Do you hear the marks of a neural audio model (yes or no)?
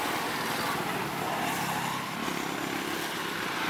no